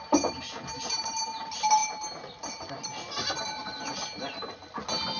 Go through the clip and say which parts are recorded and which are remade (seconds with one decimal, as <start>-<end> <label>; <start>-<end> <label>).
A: 0.0-5.2 recorded